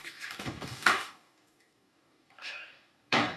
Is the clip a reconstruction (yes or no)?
yes